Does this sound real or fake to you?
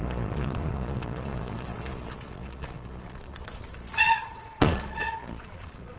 fake